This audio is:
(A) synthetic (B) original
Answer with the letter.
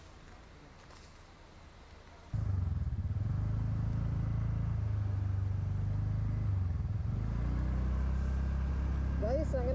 B